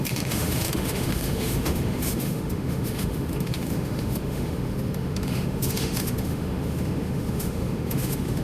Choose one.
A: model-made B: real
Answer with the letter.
A